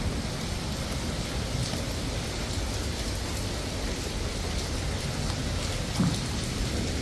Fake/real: real